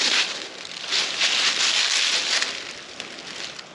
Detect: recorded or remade recorded